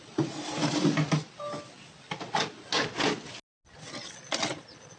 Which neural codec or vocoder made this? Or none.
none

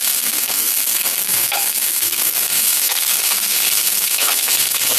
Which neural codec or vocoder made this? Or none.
codec, SNAC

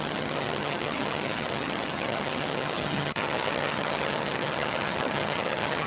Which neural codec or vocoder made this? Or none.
vocoder, HiFi-GAN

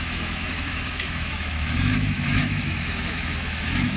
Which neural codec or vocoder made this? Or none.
autoencoder, DAC-VAE